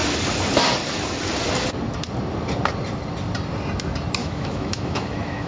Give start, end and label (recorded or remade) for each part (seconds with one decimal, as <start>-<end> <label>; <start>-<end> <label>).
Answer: 0.0-4.2 recorded; 4.2-5.5 remade